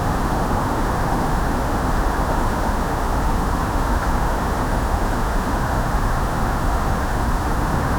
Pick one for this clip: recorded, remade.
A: remade